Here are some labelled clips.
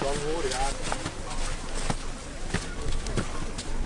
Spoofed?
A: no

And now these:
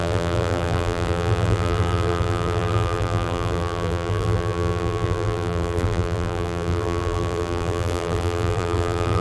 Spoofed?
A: yes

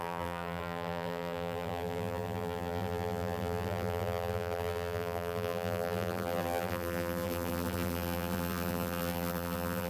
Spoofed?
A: yes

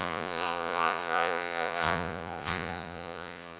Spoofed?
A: yes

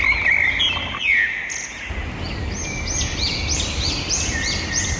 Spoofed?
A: no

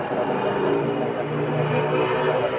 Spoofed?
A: no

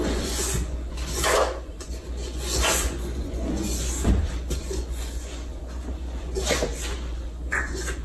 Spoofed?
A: yes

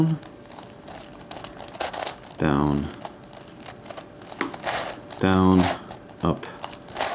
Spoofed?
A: no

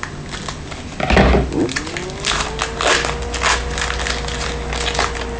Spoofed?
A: no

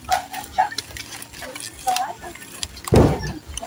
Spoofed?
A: no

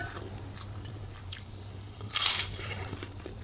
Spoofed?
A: yes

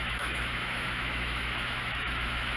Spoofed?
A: yes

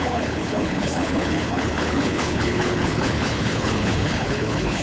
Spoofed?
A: yes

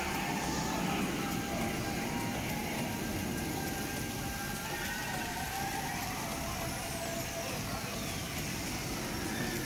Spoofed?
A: no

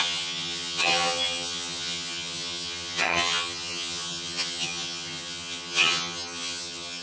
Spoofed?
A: yes